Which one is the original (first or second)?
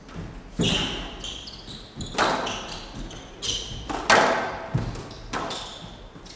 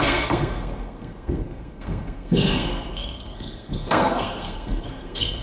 first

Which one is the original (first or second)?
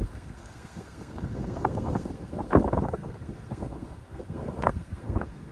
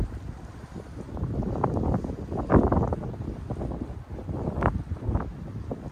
second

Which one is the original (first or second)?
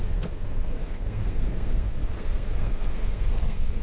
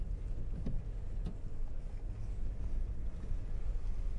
second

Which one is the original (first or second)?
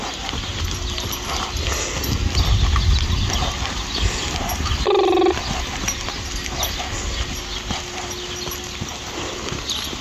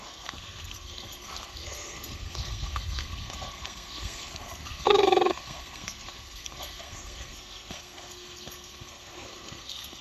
first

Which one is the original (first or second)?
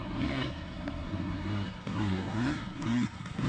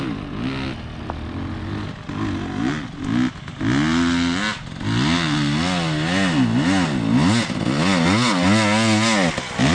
second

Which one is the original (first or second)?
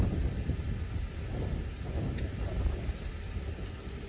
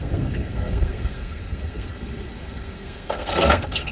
first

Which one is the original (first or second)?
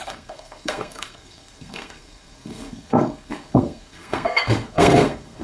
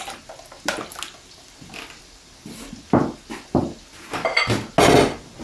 second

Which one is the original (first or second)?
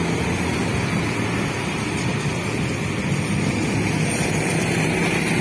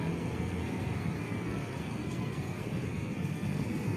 first